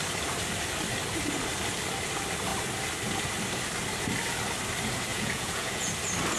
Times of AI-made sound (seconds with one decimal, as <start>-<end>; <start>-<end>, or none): 5.1-5.9